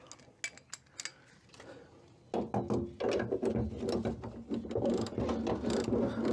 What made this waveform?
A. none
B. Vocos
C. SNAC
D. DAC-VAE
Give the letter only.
A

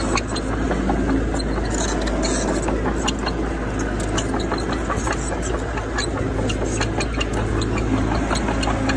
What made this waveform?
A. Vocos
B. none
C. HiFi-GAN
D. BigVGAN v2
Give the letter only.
B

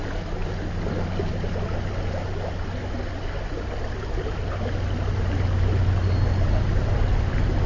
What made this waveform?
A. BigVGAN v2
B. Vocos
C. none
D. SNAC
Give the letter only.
C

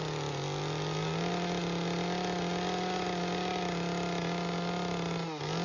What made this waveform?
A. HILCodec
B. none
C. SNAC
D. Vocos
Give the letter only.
B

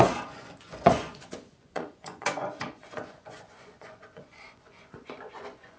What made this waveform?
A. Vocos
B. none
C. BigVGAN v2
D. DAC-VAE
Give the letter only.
A